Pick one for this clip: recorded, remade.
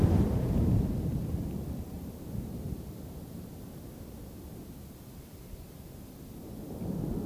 recorded